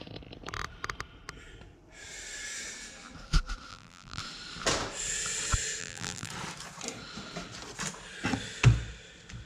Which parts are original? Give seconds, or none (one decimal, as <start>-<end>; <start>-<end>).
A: 0.0-3.7; 4.2-5.8; 6.3-9.5